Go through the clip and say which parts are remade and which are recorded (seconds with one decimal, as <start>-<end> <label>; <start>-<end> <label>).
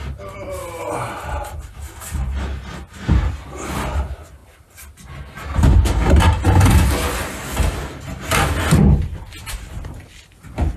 0.0-10.8 recorded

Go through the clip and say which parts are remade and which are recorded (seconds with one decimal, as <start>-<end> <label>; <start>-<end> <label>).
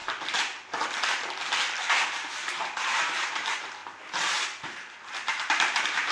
0.0-1.9 recorded; 1.9-3.8 remade; 3.8-4.6 recorded; 4.6-6.1 remade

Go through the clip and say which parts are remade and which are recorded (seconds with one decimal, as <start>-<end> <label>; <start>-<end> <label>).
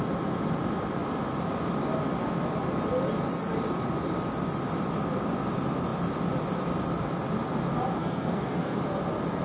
0.0-8.0 recorded; 8.0-8.8 remade; 8.8-9.4 recorded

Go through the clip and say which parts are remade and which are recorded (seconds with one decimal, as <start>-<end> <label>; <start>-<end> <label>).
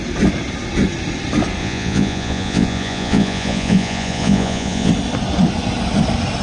0.0-1.6 recorded; 1.6-4.9 remade; 4.9-6.4 recorded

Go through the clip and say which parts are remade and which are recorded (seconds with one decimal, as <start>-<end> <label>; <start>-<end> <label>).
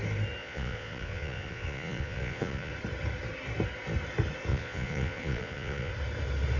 0.0-0.4 recorded; 0.4-2.7 remade; 2.7-4.5 recorded; 4.5-5.9 remade; 5.9-6.6 recorded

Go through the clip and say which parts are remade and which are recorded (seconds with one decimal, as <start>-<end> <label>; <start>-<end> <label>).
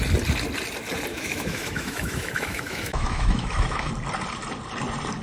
0.0-1.1 recorded; 1.1-3.9 remade; 3.9-5.2 recorded